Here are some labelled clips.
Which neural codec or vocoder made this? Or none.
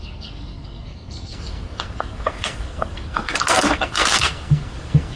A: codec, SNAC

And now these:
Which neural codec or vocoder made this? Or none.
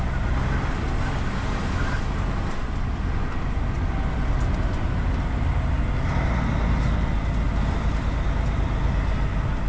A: none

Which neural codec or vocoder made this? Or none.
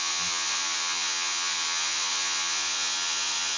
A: vocoder, Vocos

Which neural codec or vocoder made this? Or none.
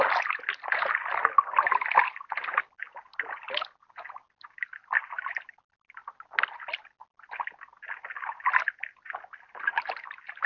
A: none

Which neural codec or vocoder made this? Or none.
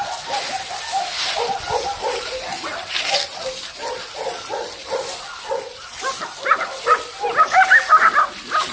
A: none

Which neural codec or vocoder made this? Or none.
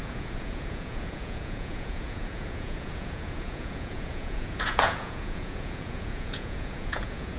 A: vocoder, Vocos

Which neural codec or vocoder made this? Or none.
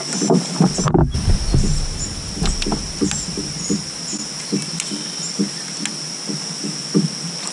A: none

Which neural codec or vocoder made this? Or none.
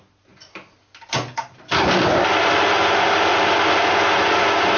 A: none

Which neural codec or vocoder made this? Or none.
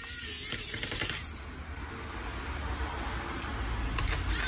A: none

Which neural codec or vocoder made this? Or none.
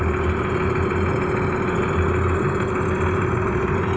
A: none